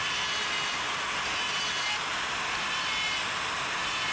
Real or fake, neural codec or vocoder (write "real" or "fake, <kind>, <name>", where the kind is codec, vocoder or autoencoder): real